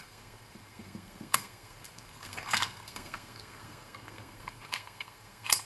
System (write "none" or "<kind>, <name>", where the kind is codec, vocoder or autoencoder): codec, SNAC